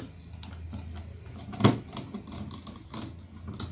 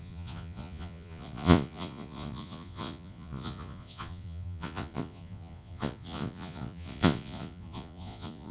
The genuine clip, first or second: first